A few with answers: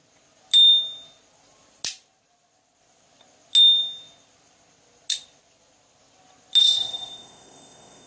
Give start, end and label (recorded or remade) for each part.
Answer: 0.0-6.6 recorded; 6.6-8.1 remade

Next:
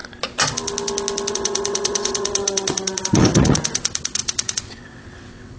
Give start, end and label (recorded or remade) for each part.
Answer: 0.0-1.3 recorded; 1.3-5.6 remade

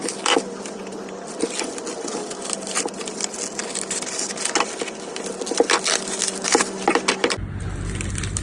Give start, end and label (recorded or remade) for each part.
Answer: 0.0-8.4 recorded

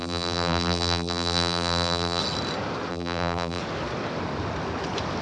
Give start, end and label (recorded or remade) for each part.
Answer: 0.0-2.2 remade; 2.2-2.9 recorded; 2.9-3.6 remade; 3.6-5.2 recorded